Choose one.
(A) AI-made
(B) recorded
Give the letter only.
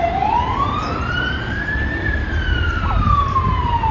A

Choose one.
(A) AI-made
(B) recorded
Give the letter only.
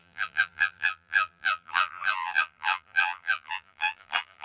A